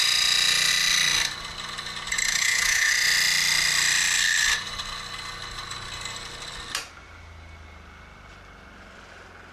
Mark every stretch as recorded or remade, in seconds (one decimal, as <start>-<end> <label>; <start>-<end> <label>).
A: 0.0-2.3 recorded; 2.3-2.9 remade; 2.9-9.5 recorded